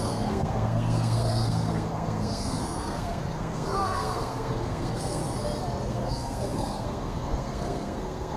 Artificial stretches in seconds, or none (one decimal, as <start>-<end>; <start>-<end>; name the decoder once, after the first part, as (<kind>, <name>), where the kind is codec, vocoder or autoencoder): 0.0-5.2 (codec, SNAC); 5.9-8.4